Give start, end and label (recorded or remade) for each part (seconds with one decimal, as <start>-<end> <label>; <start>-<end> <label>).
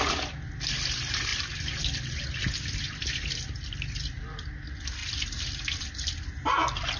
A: 0.0-5.0 recorded; 5.0-5.8 remade; 5.8-7.0 recorded